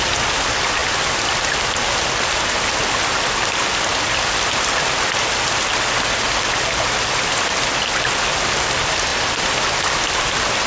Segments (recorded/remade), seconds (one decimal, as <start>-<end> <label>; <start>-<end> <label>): 0.0-10.7 recorded